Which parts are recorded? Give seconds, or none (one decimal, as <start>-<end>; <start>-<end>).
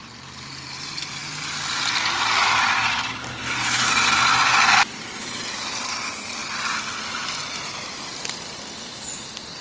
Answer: 1.2-2.6; 6.4-7.9